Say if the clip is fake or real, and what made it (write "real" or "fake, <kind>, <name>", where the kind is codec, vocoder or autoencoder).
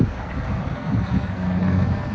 fake, codec, SNAC